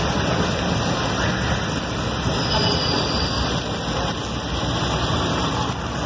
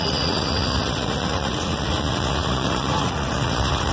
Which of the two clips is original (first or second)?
first